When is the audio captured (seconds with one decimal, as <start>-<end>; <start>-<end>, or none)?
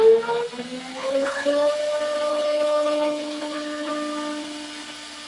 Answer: 0.0-0.9; 1.7-2.3; 3.9-5.3